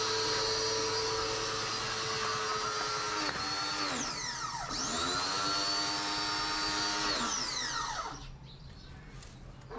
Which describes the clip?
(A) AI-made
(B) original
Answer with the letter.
B